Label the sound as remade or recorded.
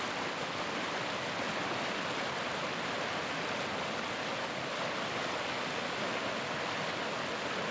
recorded